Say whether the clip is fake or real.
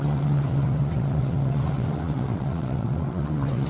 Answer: fake